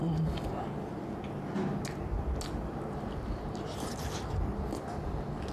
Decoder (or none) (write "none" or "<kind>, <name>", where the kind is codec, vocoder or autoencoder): none